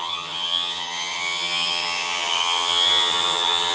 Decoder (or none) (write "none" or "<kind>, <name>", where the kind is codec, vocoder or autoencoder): vocoder, HiFi-GAN